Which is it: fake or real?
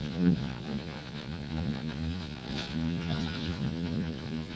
fake